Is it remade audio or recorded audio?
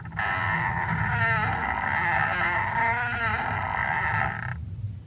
recorded